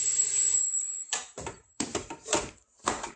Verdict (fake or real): fake